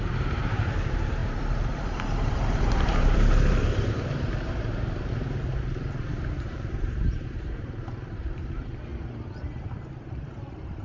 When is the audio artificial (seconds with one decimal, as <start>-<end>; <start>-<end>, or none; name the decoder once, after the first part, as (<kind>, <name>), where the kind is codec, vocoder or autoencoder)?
0.0-10.8 (vocoder, BigVGAN v2)